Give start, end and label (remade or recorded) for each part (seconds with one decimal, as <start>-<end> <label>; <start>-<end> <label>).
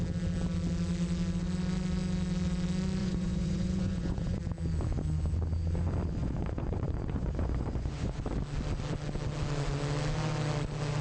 0.0-3.0 recorded; 3.0-4.4 remade; 4.4-6.2 recorded; 6.2-8.2 remade; 8.2-11.0 recorded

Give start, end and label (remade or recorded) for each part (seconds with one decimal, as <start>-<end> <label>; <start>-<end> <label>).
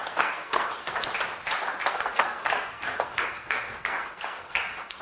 0.0-1.1 remade; 1.1-1.8 recorded; 1.8-5.0 remade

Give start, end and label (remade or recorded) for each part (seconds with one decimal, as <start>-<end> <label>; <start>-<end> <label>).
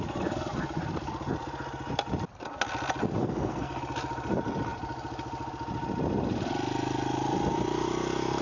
0.0-3.2 recorded; 3.2-3.8 remade; 3.8-8.4 recorded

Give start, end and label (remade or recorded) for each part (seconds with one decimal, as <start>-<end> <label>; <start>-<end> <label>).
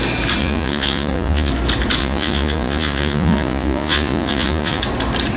0.0-0.4 recorded; 0.4-1.5 remade; 1.5-2.0 recorded; 2.0-4.8 remade; 4.8-5.4 recorded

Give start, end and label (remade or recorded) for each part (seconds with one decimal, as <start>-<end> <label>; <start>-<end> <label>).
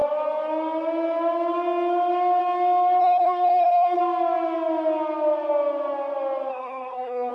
0.0-3.0 recorded; 3.0-4.0 remade; 4.0-6.5 recorded; 6.5-7.3 remade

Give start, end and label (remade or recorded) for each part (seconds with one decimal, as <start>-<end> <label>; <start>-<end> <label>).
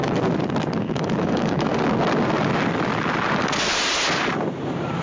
0.0-0.8 recorded; 0.8-1.7 remade; 1.7-5.0 recorded